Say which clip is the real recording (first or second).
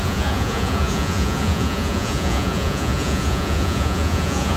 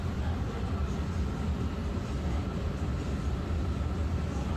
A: second